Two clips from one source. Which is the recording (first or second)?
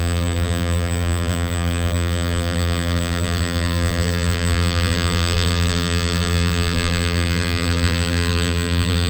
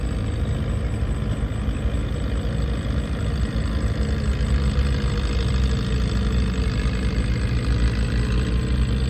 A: second